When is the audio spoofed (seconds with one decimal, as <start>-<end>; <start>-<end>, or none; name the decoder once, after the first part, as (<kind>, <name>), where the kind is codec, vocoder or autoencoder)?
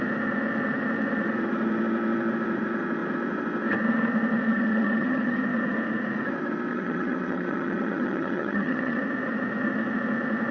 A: 4.5-5.4 (vocoder, HiFi-GAN); 6.7-9.0